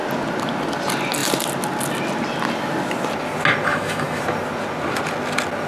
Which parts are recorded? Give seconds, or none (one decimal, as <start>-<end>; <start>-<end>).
0.0-3.7; 4.2-5.7